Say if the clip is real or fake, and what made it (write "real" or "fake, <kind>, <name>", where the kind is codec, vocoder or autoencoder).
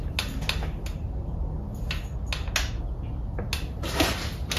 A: real